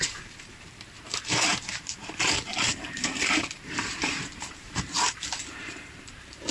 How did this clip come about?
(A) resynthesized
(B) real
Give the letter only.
A